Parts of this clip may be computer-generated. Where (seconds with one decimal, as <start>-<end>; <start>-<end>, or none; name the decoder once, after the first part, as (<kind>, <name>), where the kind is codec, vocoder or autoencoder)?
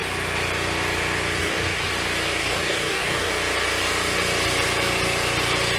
1.4-1.9 (codec, DAC); 2.4-3.3